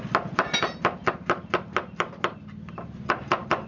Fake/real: real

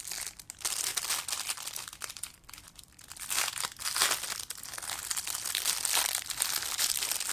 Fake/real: real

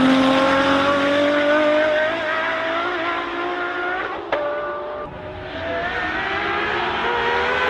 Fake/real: real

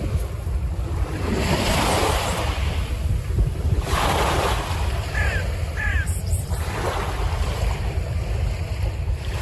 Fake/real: fake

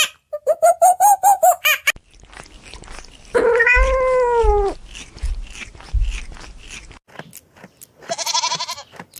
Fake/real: real